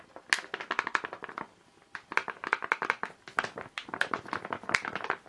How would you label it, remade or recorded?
recorded